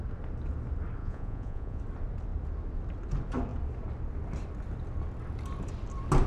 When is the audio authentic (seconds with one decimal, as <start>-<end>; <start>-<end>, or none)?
0.0-1.0; 1.8-6.3